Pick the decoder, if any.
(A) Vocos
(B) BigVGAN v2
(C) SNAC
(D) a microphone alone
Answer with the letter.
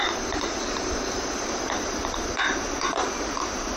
B